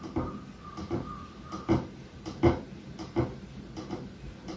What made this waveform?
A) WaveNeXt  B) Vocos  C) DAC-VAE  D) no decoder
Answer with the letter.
D